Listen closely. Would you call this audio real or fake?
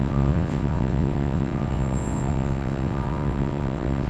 fake